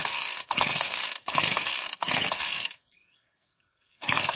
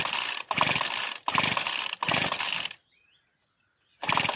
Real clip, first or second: second